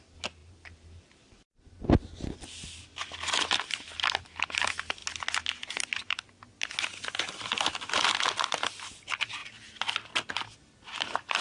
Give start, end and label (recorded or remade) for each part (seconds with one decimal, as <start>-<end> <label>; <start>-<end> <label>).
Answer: 0.0-0.4 recorded; 0.4-4.2 remade; 4.2-11.4 recorded